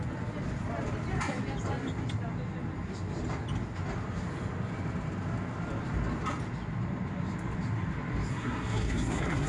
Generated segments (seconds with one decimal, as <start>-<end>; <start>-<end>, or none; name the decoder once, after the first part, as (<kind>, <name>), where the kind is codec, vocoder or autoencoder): 8.3-9.5 (codec, SNAC)